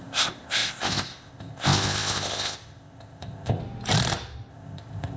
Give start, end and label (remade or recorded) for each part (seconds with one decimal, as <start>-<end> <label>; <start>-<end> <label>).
0.0-3.6 remade; 3.6-4.5 recorded; 4.5-5.2 remade